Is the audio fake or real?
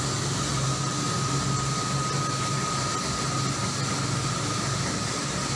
real